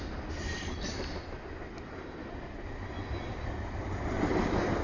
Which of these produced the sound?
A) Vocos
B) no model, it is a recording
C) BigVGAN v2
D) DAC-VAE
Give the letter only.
C